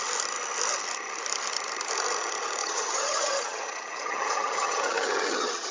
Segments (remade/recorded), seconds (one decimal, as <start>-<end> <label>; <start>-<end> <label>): 0.0-2.6 recorded; 2.6-5.7 remade

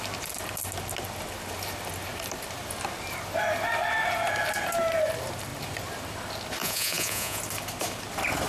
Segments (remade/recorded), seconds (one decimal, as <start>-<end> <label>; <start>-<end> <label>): 0.0-6.6 recorded; 6.6-7.4 remade; 7.4-8.5 recorded

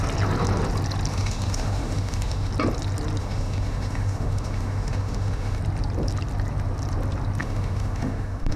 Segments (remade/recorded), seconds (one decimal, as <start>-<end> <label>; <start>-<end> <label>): 0.0-1.1 recorded; 1.1-2.5 remade; 2.5-3.2 recorded; 3.2-5.6 remade; 5.6-7.4 recorded; 7.4-8.6 remade

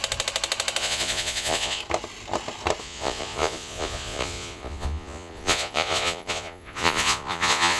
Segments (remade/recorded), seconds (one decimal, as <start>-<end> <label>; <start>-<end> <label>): 0.0-0.8 recorded; 0.8-1.8 remade; 1.8-2.8 recorded; 2.8-7.8 remade

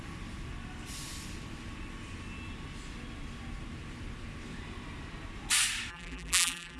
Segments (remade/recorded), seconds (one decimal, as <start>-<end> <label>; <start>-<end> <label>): 0.0-5.9 recorded; 5.9-6.8 remade